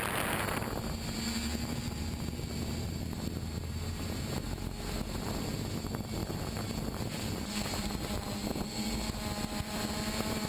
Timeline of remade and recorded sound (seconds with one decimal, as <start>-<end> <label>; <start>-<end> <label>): 0.0-6.2 recorded; 6.2-7.9 remade; 7.9-10.5 recorded